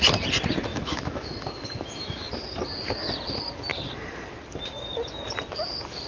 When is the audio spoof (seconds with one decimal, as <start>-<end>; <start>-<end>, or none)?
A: 0.7-2.3